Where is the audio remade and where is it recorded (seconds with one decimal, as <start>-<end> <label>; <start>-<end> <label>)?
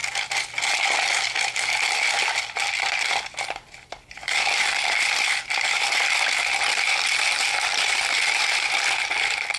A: 0.0-1.5 recorded; 1.5-9.6 remade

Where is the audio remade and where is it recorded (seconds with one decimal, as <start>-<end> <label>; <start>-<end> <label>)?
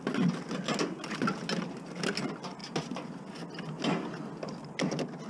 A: 0.0-5.3 recorded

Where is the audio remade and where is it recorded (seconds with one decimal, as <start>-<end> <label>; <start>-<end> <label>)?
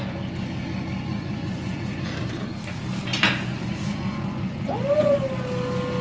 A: 0.0-1.1 recorded; 1.1-2.8 remade; 2.8-3.5 recorded; 3.5-5.2 remade; 5.2-6.0 recorded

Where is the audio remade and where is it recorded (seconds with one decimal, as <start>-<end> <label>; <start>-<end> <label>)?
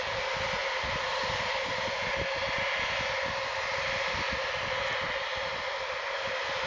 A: 0.0-6.7 recorded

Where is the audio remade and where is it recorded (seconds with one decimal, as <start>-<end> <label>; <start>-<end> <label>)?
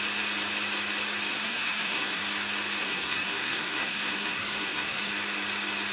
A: 0.0-1.3 recorded; 1.3-2.2 remade; 2.2-2.8 recorded; 2.8-5.1 remade; 5.1-5.9 recorded